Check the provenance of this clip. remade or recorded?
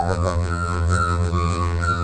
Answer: remade